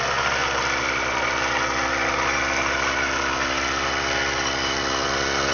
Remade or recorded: recorded